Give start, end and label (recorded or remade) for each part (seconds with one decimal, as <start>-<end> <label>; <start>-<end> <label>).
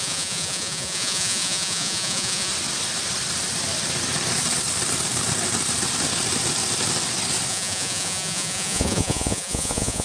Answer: 0.0-2.5 remade; 2.5-7.5 recorded; 7.5-10.0 remade